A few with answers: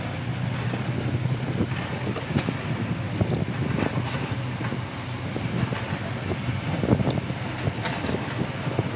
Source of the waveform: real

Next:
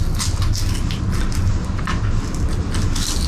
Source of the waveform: real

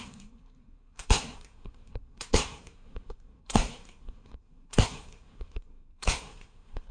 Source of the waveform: fake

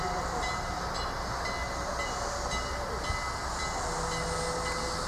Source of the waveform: real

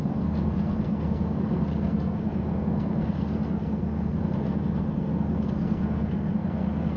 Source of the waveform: fake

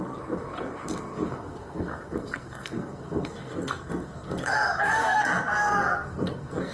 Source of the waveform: fake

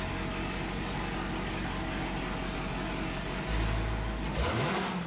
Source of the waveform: real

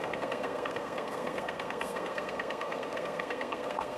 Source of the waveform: fake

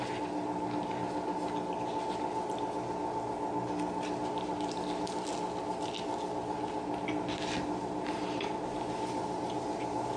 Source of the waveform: real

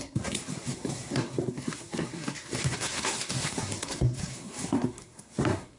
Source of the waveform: fake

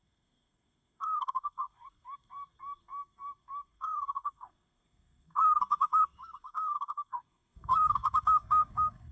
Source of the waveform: fake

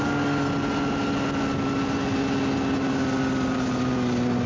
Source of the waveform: real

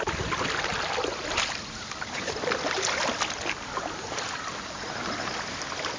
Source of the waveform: real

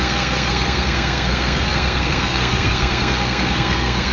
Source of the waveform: fake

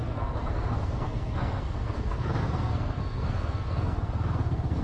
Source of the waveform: fake